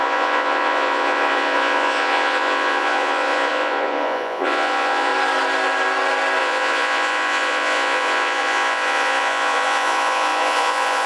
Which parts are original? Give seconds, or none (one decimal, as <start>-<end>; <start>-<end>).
5.1-6.4